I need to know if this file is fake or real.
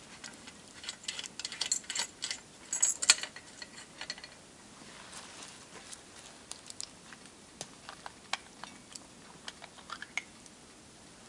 real